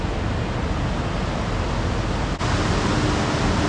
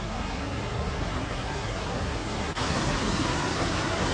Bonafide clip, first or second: first